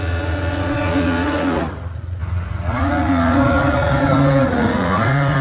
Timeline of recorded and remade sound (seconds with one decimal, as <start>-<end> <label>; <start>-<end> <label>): 0.0-5.4 remade